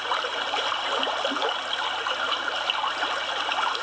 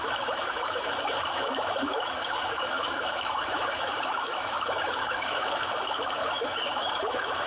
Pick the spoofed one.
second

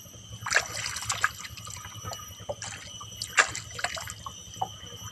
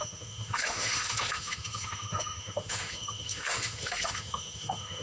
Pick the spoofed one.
second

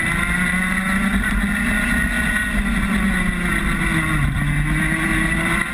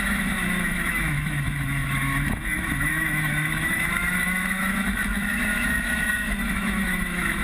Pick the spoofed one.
second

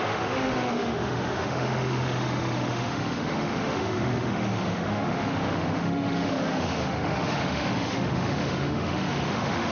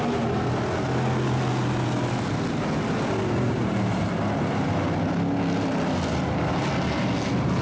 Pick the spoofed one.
first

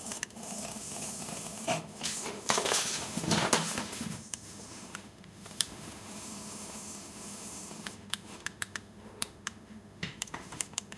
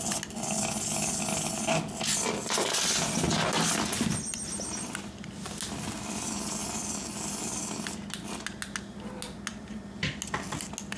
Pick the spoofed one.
first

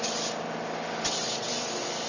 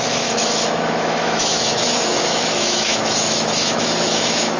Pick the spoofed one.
second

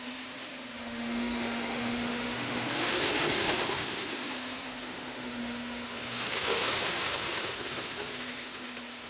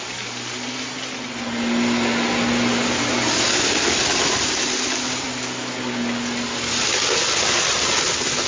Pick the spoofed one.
first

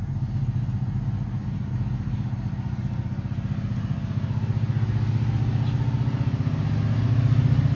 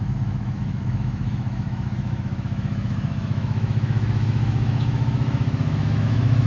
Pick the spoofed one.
second